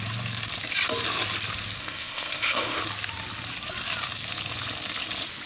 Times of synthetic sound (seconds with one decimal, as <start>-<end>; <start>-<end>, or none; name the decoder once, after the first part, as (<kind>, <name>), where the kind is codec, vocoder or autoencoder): 1.8-2.8 (codec, ZipCodec)